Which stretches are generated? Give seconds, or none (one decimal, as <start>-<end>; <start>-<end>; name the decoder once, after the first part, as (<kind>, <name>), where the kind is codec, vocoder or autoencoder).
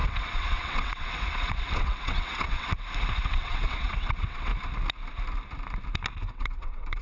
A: 0.0-2.7 (vocoder, WaveNeXt); 3.2-4.5; 6.3-7.0